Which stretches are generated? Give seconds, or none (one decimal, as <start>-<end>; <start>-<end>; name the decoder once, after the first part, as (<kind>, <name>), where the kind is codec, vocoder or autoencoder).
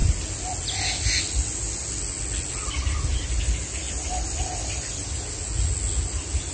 none